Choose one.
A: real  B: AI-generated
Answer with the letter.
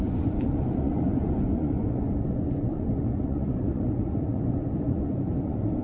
B